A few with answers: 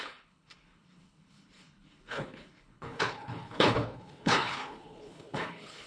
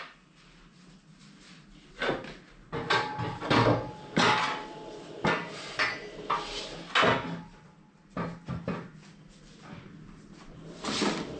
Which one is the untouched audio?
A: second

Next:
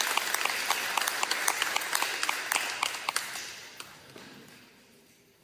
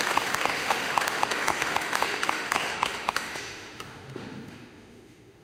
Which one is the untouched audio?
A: first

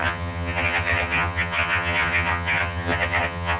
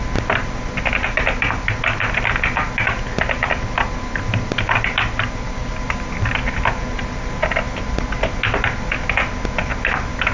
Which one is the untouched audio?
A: second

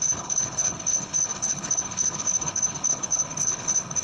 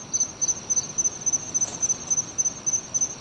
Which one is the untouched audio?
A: second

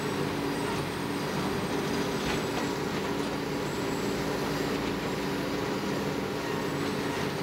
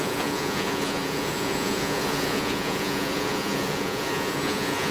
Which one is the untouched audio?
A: first